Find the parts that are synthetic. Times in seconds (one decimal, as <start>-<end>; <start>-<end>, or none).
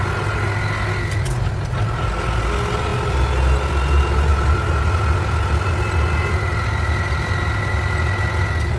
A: none